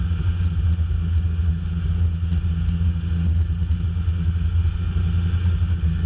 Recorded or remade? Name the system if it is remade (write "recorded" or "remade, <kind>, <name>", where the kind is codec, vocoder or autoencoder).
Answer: recorded